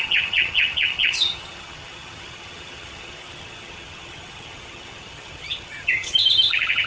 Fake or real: fake